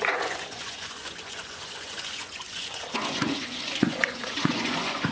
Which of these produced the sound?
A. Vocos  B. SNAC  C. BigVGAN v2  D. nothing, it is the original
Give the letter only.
A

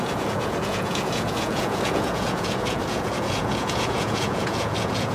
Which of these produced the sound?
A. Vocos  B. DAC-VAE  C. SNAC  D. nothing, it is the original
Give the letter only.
A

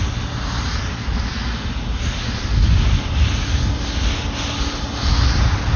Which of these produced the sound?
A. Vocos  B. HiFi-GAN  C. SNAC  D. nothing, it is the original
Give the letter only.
D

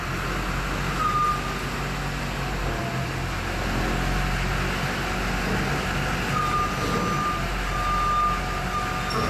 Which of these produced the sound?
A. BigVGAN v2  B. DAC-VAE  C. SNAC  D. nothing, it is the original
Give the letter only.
D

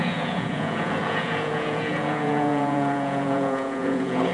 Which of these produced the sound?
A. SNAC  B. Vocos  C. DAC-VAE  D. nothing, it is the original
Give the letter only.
B